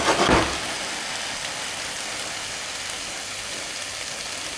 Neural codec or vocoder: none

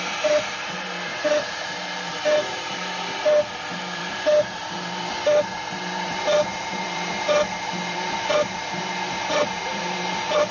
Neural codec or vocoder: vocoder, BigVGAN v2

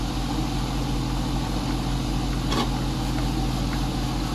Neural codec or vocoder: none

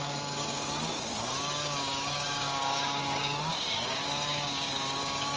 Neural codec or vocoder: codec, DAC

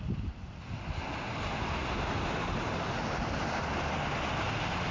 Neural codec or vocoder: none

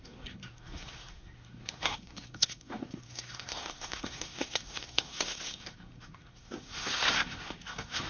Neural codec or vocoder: codec, SNAC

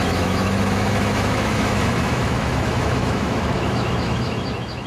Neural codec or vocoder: autoencoder, DAC-VAE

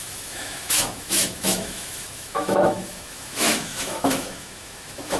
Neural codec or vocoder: autoencoder, DAC-VAE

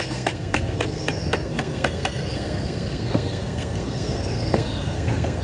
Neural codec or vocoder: codec, SNAC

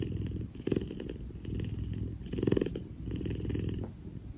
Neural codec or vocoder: none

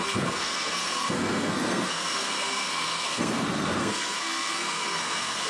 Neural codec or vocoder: codec, SNAC